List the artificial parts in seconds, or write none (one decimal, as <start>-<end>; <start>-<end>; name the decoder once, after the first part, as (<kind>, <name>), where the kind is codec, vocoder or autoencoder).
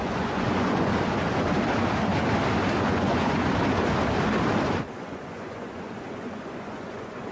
0.0-0.9 (vocoder, Vocos); 2.8-3.4; 5.0-7.3